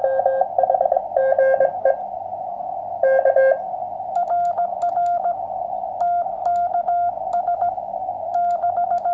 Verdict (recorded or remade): recorded